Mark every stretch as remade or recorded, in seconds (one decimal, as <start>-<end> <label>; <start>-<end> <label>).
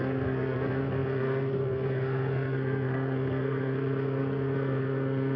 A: 0.0-5.4 remade